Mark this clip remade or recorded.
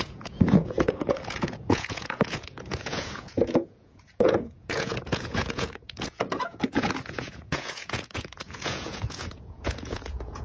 remade